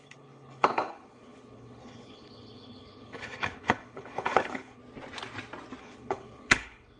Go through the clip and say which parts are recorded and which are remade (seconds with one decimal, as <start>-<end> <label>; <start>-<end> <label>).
0.0-4.8 remade; 4.8-5.8 recorded; 5.8-7.0 remade